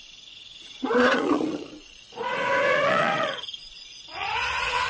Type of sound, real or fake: fake